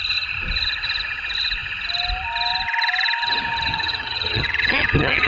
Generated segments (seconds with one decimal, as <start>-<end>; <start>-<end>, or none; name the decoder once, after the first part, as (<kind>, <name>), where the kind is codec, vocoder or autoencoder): 3.7-5.3 (vocoder, HiFi-GAN)